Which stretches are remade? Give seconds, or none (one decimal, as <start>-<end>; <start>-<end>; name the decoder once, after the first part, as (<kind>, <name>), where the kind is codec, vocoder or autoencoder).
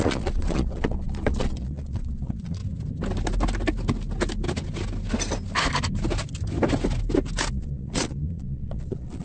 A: 0.0-2.6 (vocoder, Vocos); 7.5-9.2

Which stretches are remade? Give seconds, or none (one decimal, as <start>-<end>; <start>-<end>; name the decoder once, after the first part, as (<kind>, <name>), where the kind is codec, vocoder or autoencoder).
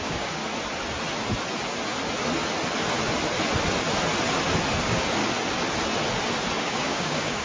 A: 0.0-0.4 (codec, DAC); 4.8-5.2; 6.6-7.4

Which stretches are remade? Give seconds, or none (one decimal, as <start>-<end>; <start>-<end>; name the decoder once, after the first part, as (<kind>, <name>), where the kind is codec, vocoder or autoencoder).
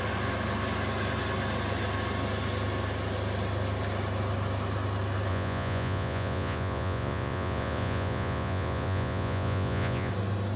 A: 5.3-10.1 (vocoder, Vocos)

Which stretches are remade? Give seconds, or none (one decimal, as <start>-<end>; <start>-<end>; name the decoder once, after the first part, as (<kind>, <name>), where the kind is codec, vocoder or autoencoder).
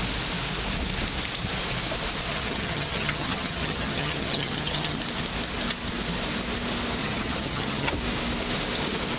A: 2.3-5.0 (vocoder, HiFi-GAN); 7.0-7.9